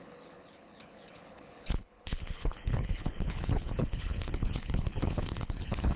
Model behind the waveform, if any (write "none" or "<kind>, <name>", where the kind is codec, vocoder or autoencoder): codec, HILCodec